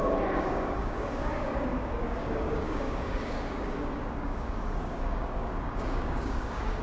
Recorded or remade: remade